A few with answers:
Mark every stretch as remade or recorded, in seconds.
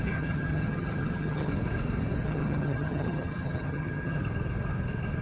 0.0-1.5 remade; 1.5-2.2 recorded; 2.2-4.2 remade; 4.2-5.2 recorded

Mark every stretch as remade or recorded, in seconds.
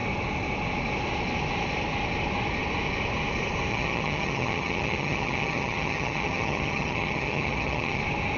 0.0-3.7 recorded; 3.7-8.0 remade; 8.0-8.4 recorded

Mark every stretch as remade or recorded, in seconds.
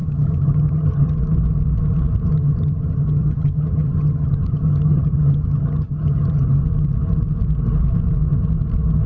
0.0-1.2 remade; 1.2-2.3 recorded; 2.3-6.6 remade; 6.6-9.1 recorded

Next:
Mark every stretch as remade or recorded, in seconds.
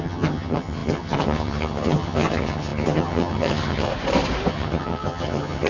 0.0-3.9 remade; 3.9-4.5 recorded; 4.5-5.7 remade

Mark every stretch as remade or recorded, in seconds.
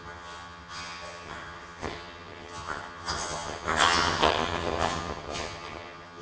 0.0-6.2 remade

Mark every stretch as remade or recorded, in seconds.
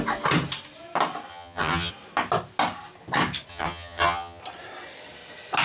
0.0-1.3 recorded; 1.3-1.9 remade; 1.9-3.5 recorded; 3.5-4.4 remade; 4.4-5.6 recorded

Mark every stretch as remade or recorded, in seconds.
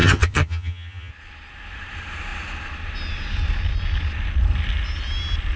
0.0-1.1 remade; 1.1-5.6 recorded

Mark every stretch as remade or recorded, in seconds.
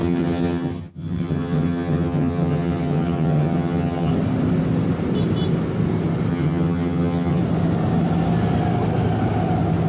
0.0-4.1 remade; 4.1-6.3 recorded; 6.3-7.4 remade; 7.4-9.9 recorded